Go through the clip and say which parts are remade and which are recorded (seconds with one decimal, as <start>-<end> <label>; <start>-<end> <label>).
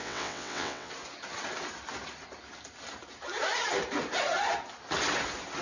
0.0-0.9 remade; 0.9-5.6 recorded